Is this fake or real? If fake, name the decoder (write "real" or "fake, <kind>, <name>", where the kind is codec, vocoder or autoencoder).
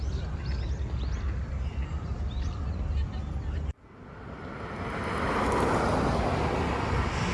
real